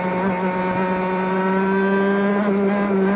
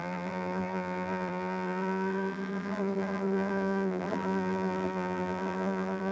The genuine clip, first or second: first